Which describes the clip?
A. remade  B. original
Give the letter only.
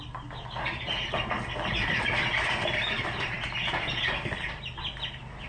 B